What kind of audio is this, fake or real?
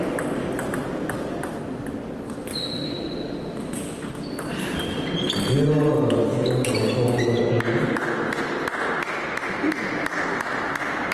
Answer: real